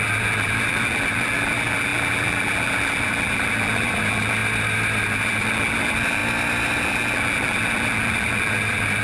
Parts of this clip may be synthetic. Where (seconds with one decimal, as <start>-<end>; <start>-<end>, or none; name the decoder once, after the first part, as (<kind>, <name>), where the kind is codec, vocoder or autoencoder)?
0.0-4.4 (vocoder, BigVGAN v2); 5.0-6.2; 6.8-9.0